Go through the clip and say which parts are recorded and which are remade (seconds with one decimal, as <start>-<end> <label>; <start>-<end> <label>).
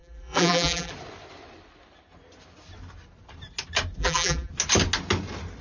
0.0-0.9 remade; 0.9-4.0 recorded; 4.0-4.5 remade; 4.5-5.6 recorded